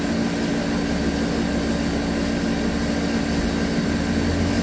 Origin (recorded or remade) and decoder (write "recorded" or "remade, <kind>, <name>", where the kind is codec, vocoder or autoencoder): recorded